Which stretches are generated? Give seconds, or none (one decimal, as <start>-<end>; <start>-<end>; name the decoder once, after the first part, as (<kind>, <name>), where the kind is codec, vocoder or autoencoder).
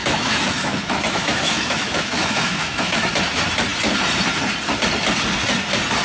0.0-3.1 (autoencoder, DAC-VAE)